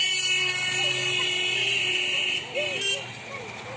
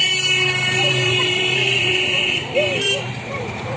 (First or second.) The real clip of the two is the first